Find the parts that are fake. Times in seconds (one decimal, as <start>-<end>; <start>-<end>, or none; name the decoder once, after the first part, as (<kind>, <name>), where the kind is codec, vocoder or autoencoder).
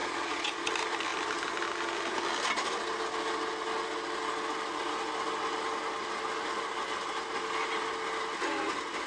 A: 0.0-0.5 (vocoder, Vocos)